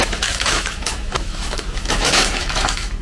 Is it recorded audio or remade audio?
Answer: remade